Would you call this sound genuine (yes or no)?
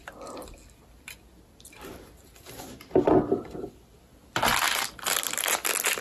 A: yes